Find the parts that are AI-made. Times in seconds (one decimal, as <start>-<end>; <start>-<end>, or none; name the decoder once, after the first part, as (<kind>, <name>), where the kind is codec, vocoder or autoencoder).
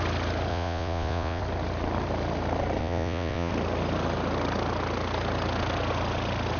0.5-1.4 (vocoder, Vocos); 2.8-3.5